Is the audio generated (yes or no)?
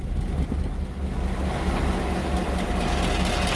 no